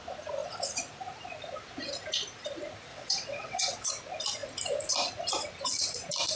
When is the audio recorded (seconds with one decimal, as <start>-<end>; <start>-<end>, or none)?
0.0-2.9; 3.9-6.4